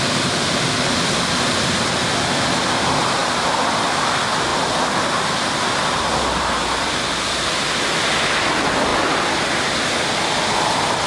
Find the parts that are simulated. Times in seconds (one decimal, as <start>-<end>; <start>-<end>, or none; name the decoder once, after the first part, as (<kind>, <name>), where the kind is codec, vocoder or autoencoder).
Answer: 3.2-3.8 (vocoder, BigVGAN v2)